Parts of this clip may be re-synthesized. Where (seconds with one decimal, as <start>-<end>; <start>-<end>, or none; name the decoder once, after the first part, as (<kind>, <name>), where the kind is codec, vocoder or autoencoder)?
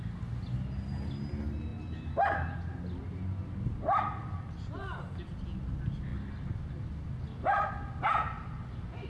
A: none